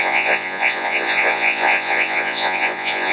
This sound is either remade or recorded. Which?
remade